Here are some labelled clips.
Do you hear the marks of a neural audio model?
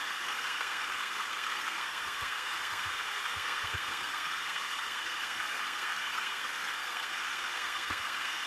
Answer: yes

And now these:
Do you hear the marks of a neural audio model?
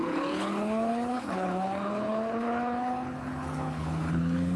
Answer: yes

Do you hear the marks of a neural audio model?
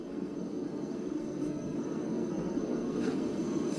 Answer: yes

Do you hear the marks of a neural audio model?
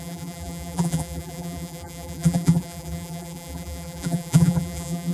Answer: yes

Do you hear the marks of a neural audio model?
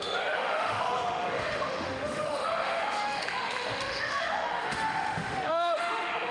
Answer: yes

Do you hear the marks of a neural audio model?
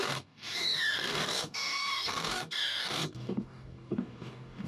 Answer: yes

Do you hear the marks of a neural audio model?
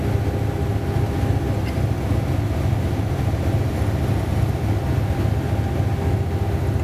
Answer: no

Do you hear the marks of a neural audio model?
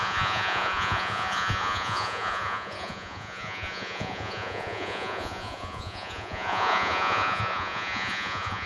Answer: yes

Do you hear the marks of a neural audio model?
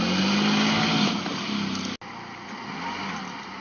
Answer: no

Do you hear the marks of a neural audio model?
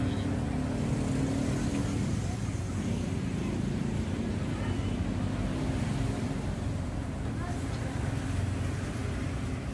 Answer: no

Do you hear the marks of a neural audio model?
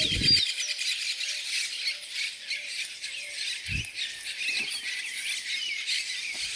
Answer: no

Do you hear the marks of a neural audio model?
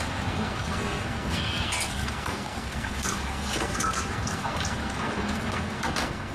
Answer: yes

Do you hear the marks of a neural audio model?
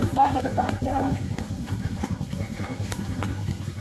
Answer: yes